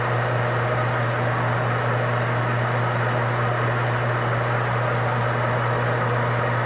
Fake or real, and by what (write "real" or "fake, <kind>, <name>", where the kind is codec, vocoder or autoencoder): real